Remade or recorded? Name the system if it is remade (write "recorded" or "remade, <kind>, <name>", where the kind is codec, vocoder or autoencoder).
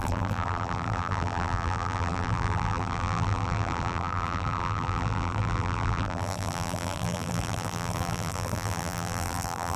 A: remade, vocoder, BigVGAN v2